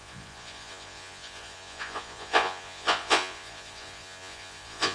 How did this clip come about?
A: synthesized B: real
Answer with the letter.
A